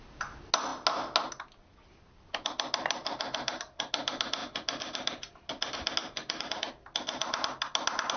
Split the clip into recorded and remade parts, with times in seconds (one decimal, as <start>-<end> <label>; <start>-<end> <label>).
0.0-3.0 recorded; 3.0-3.9 remade; 3.9-4.4 recorded; 4.4-5.5 remade; 5.5-6.0 recorded; 6.0-6.7 remade; 6.7-8.2 recorded

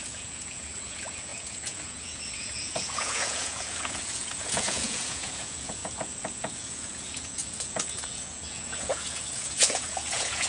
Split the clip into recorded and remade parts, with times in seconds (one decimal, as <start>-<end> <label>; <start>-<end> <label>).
0.0-10.5 remade

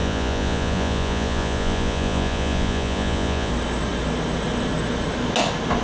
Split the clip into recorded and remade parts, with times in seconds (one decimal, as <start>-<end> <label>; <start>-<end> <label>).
0.0-3.5 remade; 3.5-5.8 recorded

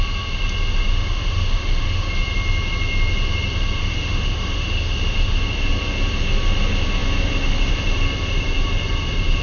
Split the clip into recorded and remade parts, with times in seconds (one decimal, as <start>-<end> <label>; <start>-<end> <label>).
0.0-0.9 recorded; 0.9-2.1 remade; 2.1-3.8 recorded; 3.8-5.4 remade; 5.4-9.4 recorded